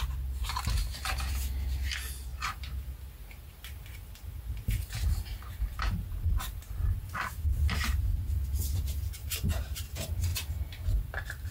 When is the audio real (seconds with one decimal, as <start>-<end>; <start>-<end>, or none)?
0.0-5.3; 6.4-9.2; 9.9-11.5

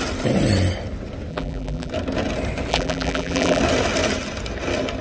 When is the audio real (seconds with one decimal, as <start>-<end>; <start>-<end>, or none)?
0.0-1.3; 1.9-2.7; 3.6-5.0